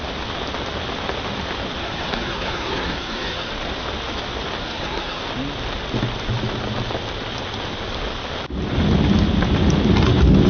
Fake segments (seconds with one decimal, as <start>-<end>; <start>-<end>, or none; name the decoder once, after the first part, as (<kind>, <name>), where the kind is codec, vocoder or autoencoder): 1.8-3.5 (codec, SNAC); 4.6-5.2